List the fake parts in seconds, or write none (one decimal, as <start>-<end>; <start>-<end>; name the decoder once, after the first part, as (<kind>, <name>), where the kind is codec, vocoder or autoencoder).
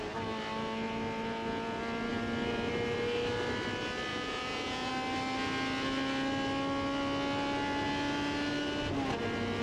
4.1-4.9 (vocoder, Vocos)